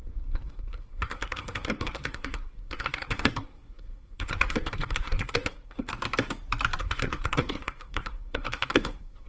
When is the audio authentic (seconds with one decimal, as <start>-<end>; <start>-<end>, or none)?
5.9-6.8